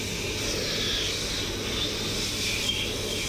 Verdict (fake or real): real